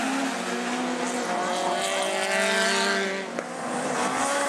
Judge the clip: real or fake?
real